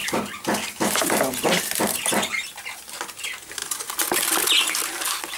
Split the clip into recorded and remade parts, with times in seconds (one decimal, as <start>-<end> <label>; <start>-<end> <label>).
0.0-1.0 remade; 1.0-5.4 recorded